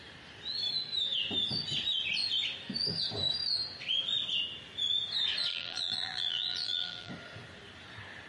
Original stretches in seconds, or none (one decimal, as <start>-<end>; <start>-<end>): 0.0-5.5; 7.1-8.3